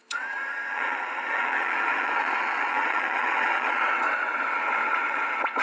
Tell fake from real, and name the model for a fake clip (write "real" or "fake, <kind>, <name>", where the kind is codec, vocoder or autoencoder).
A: fake, vocoder, WaveNeXt